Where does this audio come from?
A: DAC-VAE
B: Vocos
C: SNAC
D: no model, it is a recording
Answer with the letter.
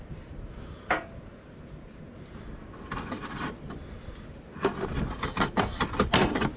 D